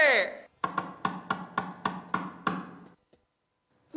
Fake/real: real